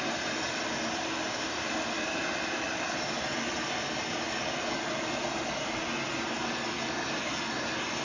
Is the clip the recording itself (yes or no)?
yes